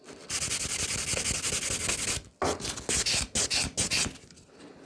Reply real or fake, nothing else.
real